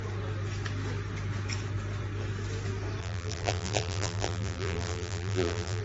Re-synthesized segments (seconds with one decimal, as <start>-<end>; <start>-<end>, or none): 3.0-5.8